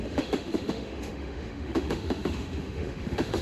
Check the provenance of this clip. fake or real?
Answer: fake